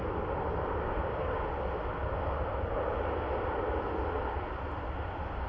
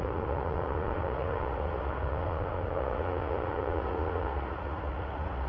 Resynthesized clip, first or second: second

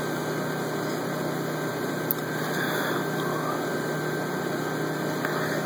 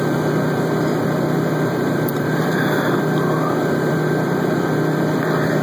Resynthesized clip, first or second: second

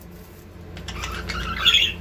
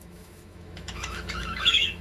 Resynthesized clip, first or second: second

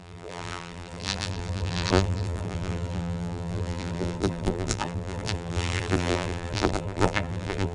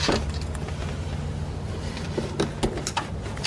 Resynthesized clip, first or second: first